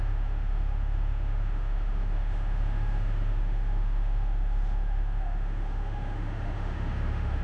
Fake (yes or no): yes